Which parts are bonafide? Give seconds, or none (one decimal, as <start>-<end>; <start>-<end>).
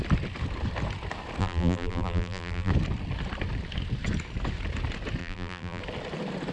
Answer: 0.0-1.4; 2.7-5.2; 5.8-6.5